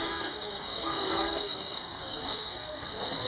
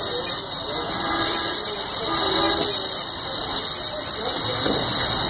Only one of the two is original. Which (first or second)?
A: second